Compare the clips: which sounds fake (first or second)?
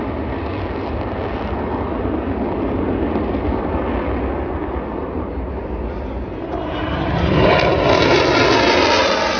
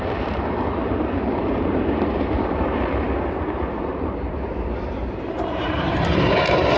second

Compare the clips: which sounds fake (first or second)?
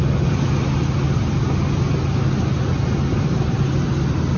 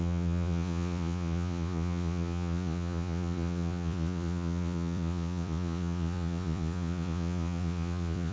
second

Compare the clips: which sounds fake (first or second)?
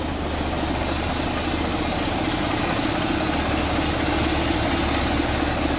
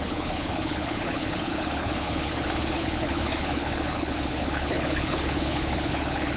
second